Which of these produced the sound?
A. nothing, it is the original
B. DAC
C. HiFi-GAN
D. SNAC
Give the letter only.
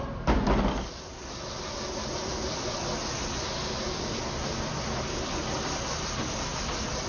A